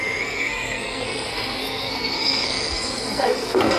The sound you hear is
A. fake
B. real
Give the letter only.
A